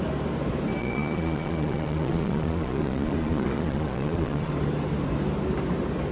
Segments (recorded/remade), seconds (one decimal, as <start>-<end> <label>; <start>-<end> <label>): 0.0-0.8 recorded; 0.8-4.5 remade; 4.5-6.1 recorded